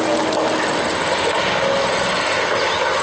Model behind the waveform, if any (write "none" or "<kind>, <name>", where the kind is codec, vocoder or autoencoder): none